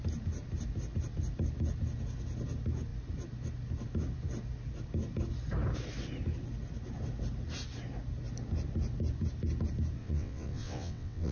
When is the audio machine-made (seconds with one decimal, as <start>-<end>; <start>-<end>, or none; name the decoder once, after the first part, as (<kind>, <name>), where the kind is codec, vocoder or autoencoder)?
10.0-11.3 (vocoder, WaveNeXt)

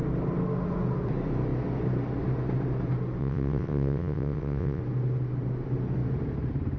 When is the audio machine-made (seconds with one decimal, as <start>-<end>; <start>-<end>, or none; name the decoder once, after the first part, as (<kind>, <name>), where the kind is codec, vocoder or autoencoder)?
3.2-4.8 (vocoder, WaveNeXt)

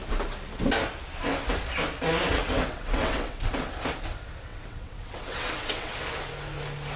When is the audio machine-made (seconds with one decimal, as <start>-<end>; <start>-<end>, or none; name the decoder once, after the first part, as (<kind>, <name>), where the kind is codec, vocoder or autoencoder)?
2.3-3.7 (vocoder, WaveNeXt); 4.5-5.9

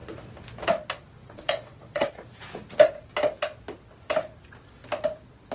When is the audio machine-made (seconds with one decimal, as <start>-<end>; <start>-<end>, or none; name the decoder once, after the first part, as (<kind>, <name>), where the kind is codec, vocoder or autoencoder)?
1.2-2.1 (vocoder, WaveNeXt)

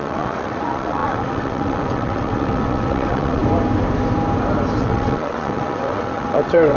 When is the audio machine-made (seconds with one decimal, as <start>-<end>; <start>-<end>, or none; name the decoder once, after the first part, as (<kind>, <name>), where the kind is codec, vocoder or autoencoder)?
0.0-3.4 (vocoder, WaveNeXt); 4.8-6.8